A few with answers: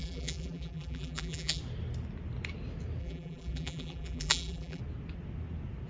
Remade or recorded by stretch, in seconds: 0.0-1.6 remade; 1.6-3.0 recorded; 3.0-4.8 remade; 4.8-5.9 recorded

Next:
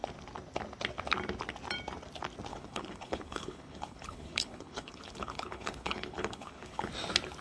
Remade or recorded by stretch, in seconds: 0.0-2.5 recorded; 2.5-6.9 remade; 6.9-7.4 recorded

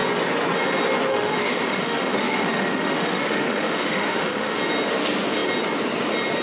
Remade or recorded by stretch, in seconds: 0.0-1.1 recorded; 1.1-4.6 remade; 4.6-6.4 recorded

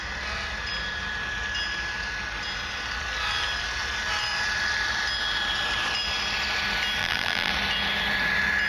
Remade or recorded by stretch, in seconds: 0.0-7.0 recorded; 7.0-7.5 remade; 7.5-8.7 recorded